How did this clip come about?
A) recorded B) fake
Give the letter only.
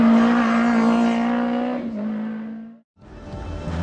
A